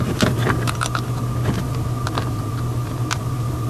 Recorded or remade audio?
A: recorded